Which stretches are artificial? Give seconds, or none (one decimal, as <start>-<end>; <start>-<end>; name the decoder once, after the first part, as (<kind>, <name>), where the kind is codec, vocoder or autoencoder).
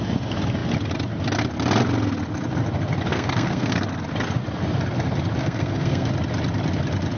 3.1-4.0 (codec, SNAC); 5.4-6.1